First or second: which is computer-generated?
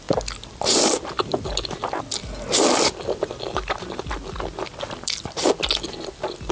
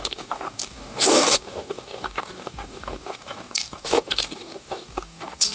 second